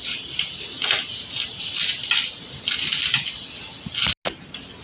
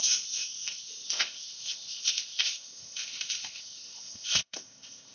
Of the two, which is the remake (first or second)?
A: second